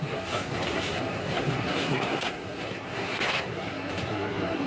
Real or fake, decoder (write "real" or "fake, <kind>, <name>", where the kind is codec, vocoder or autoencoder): fake, codec, SNAC